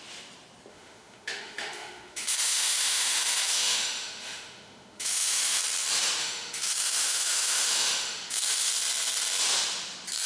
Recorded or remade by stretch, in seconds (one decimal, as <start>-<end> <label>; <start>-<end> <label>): 0.0-0.7 recorded; 0.7-5.6 remade; 5.6-6.2 recorded; 6.2-8.7 remade; 8.7-10.3 recorded